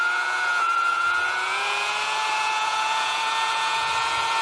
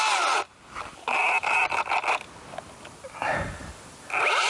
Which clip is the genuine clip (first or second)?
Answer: second